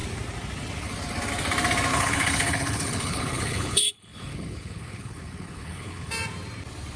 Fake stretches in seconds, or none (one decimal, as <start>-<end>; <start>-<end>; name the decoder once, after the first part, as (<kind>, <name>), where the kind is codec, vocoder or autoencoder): 1.9-6.1 (codec, HILCodec)